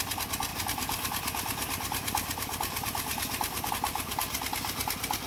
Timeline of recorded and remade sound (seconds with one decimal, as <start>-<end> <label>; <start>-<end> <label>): 0.0-5.3 recorded

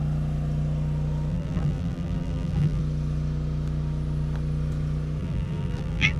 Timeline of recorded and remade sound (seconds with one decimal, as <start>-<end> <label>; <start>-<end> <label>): 0.0-1.3 recorded; 1.3-2.8 remade; 2.8-5.2 recorded; 5.2-6.2 remade

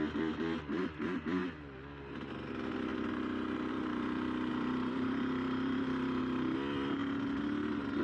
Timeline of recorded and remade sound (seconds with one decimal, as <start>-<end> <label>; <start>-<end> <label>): 0.0-1.4 remade; 1.4-2.3 recorded; 2.3-2.9 remade; 2.9-3.7 recorded; 3.7-7.0 remade; 7.0-8.0 recorded

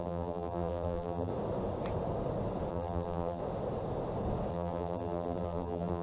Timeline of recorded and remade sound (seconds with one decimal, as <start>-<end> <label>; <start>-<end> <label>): 0.0-1.3 remade; 1.3-2.7 recorded; 2.7-3.4 remade; 3.4-4.5 recorded; 4.5-6.0 remade